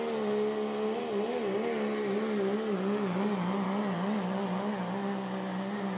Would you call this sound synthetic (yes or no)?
no